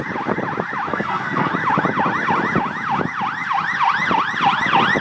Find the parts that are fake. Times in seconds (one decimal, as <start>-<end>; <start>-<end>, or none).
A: 0.9-1.5

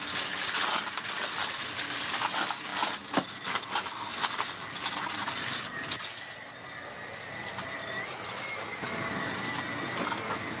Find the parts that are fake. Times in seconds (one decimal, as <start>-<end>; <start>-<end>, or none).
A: none